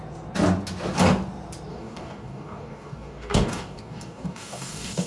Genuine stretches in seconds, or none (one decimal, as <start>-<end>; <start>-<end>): 0.0-1.7